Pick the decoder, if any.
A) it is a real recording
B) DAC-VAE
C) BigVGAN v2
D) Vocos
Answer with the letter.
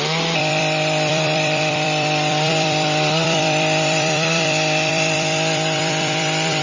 C